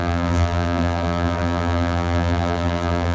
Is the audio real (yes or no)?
no